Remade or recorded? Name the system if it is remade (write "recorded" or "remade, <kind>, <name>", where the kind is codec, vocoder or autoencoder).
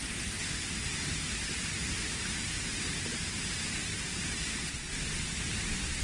recorded